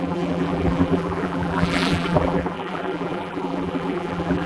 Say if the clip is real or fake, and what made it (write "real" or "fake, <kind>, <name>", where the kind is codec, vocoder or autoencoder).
fake, vocoder, BigVGAN v2